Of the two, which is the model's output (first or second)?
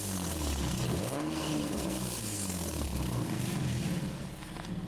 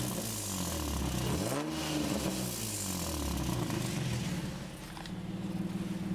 first